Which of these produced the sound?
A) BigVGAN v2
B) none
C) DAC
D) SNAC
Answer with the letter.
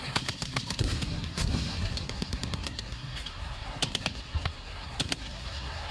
D